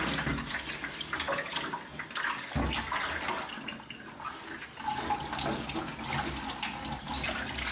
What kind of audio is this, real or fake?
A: real